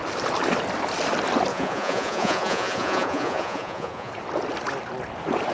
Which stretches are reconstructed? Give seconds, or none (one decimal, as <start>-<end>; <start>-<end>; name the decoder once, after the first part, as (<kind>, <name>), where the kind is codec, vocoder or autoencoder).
1.5-4.1 (vocoder, Vocos)